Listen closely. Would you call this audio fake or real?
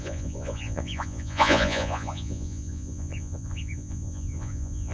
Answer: fake